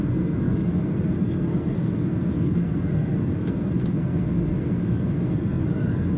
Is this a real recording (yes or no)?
no